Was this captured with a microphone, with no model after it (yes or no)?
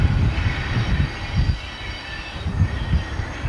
yes